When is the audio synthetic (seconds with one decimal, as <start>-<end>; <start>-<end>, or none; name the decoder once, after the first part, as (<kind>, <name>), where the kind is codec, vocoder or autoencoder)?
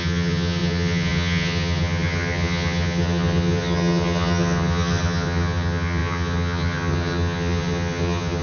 0.0-8.4 (vocoder, HiFi-GAN)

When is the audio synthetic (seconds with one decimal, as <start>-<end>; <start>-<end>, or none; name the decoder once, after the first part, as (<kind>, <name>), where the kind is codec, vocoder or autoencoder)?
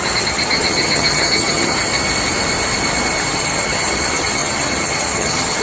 0.0-1.9 (vocoder, HiFi-GAN); 3.3-5.6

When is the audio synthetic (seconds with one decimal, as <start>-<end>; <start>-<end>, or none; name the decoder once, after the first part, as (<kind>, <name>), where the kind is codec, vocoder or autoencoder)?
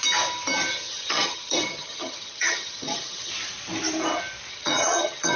0.7-3.3 (vocoder, HiFi-GAN); 4.5-5.4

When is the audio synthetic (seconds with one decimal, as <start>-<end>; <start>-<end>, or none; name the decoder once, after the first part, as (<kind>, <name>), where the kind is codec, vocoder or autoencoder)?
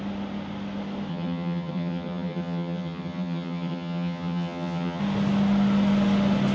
1.1-5.0 (vocoder, HiFi-GAN)